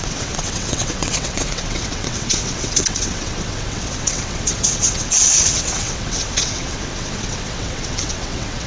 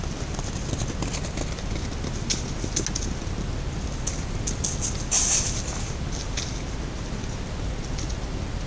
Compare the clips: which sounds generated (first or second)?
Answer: first